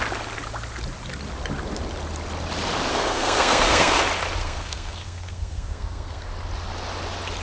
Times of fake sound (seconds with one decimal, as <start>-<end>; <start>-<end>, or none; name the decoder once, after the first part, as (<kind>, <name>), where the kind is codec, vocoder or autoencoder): 2.9-4.0 (codec, SNAC); 4.4-6.3